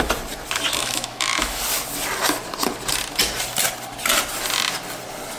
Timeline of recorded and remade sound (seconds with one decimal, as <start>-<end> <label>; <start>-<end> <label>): 0.0-0.8 recorded; 0.8-1.6 remade; 1.6-5.4 recorded